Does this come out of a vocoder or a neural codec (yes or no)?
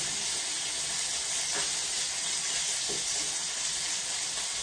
no